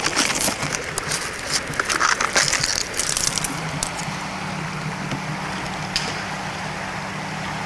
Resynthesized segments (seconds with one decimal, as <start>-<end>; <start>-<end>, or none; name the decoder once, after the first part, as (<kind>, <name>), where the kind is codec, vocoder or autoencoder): none